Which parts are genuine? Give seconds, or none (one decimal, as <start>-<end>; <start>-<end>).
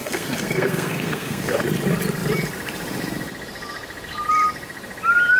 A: 1.6-5.4